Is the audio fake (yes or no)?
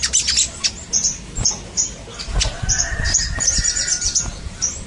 no